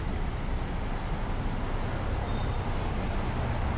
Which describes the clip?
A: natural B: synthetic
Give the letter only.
A